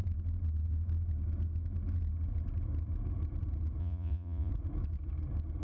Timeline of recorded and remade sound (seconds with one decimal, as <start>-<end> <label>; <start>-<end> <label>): 0.0-3.8 recorded; 3.8-4.5 remade; 4.5-5.6 recorded